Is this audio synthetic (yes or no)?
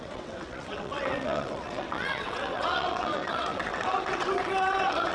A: yes